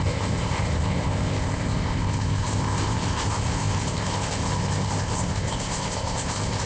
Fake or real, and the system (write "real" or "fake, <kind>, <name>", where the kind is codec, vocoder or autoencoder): fake, codec, ZipCodec